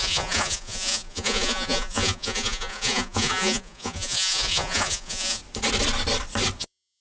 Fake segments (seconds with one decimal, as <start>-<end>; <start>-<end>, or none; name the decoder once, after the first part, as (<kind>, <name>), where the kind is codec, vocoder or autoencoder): 0.0-5.4 (vocoder, Vocos); 6.6-7.0